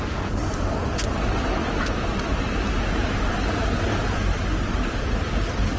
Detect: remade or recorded recorded